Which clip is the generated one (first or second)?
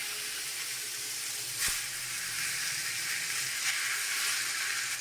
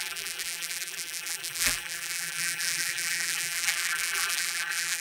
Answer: second